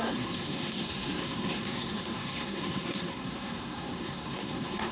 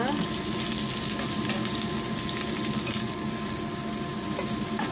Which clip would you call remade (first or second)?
first